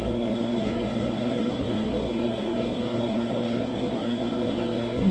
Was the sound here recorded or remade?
remade